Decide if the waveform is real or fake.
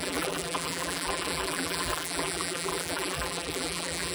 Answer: fake